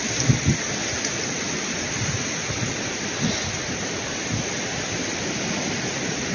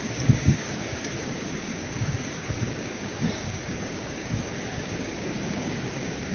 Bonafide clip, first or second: first